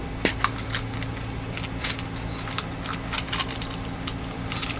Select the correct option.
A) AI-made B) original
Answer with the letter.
B